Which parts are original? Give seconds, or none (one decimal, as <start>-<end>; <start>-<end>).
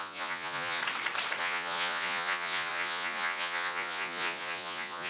0.8-1.4